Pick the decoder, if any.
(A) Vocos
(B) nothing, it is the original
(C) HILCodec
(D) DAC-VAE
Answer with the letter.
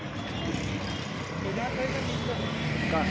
B